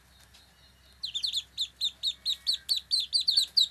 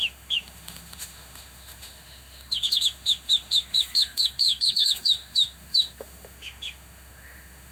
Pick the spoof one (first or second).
second